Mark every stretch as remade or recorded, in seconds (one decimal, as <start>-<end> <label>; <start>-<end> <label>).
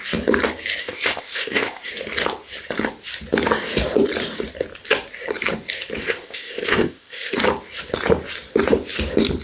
0.0-0.8 recorded; 0.8-1.9 remade; 1.9-6.0 recorded; 6.0-7.4 remade; 7.4-9.4 recorded